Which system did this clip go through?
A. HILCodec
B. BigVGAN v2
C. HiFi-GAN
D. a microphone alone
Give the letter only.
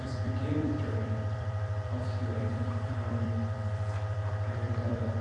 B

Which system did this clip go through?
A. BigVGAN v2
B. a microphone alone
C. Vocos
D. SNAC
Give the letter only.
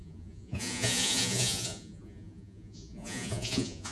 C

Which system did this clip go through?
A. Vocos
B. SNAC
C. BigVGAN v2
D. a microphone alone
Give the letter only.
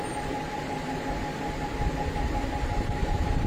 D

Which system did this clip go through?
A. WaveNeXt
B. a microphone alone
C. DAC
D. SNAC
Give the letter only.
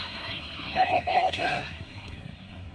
D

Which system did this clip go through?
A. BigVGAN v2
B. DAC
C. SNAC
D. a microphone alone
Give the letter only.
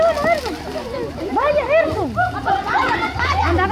D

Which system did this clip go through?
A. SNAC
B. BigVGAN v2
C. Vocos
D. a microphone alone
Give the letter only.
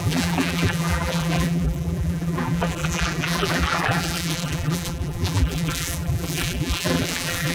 B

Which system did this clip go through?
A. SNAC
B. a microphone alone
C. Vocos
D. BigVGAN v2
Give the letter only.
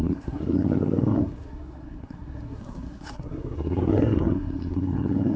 A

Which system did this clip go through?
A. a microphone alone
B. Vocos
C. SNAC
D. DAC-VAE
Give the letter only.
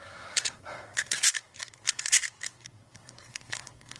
C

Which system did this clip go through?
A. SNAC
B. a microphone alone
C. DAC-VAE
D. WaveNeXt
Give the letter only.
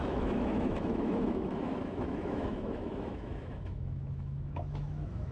C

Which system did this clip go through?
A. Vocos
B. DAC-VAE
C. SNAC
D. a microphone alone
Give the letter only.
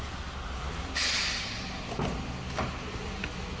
D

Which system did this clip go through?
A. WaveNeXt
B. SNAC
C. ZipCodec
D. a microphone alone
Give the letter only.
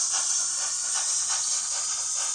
D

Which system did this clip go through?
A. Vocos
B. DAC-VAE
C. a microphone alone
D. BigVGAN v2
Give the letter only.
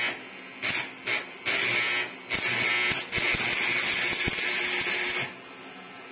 C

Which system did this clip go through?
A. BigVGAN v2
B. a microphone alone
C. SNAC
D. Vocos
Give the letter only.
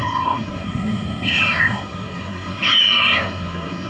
C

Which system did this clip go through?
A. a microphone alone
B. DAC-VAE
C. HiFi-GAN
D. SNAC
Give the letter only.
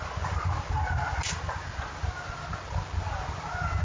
A